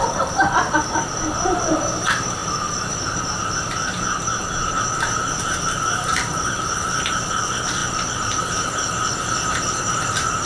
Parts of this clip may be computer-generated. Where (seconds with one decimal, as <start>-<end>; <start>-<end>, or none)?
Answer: 0.0-10.5